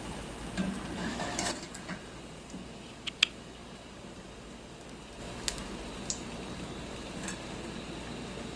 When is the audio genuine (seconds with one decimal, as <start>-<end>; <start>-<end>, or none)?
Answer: 0.0-1.0; 1.5-8.6